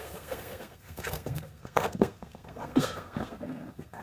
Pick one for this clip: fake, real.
fake